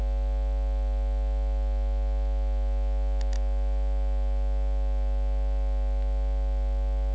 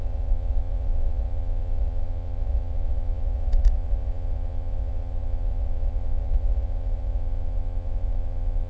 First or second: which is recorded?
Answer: first